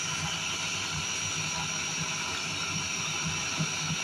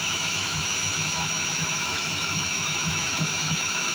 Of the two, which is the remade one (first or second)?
second